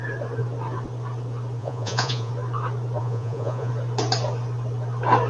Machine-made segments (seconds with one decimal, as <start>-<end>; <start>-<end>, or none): 1.6-2.3; 3.0-3.7